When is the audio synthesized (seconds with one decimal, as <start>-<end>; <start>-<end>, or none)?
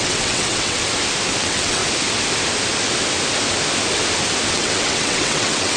0.0-0.8; 1.4-1.8; 4.5-5.8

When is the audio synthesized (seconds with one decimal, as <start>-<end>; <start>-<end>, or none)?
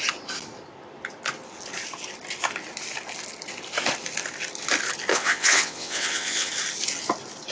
5.1-6.5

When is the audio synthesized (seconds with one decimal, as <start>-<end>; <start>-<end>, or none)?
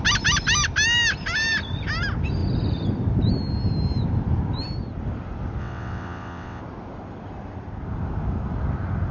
5.6-6.6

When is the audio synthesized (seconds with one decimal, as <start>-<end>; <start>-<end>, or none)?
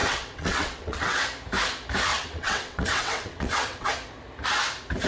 0.0-1.2; 2.1-3.9